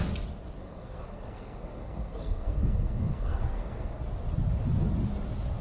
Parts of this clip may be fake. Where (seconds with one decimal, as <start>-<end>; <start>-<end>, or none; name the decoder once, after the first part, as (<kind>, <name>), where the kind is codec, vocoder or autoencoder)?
0.6-4.0 (codec, SNAC)